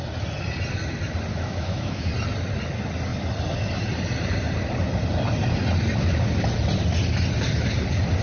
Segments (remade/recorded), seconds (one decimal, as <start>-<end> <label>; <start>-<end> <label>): 0.0-1.3 recorded; 1.3-2.1 remade; 2.1-8.2 recorded